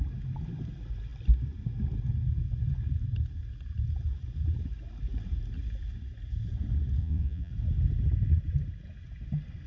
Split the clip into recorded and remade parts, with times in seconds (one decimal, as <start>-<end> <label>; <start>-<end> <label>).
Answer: 0.0-7.0 recorded; 7.0-7.5 remade; 7.5-9.7 recorded